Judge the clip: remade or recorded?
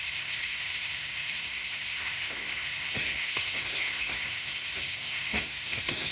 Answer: remade